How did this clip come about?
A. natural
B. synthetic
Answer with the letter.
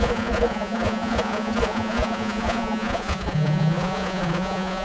B